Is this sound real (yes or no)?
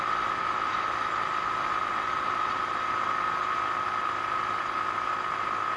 yes